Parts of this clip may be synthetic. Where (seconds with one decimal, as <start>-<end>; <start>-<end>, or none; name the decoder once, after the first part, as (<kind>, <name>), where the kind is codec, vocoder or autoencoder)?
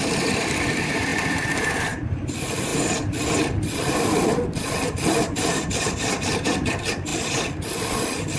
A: 0.0-7.1 (vocoder, BigVGAN v2); 7.7-8.4